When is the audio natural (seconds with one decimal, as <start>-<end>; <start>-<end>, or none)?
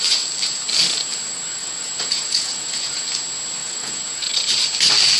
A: 0.0-1.6; 3.0-3.6; 4.3-5.2